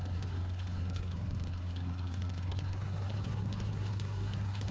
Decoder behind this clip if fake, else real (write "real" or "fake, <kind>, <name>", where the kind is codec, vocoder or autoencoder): fake, codec, SNAC